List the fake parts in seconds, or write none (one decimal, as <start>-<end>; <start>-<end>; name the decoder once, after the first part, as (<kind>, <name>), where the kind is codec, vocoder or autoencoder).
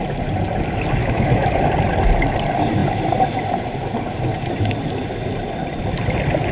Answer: 1.0-1.6 (autoencoder, DAC-VAE)